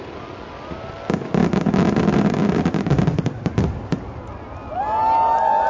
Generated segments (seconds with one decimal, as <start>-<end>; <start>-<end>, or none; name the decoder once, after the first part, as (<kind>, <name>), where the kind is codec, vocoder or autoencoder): none